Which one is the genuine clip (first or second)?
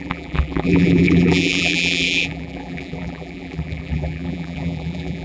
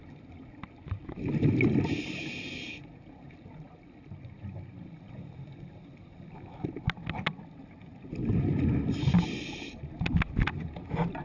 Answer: second